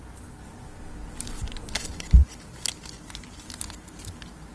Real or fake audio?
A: real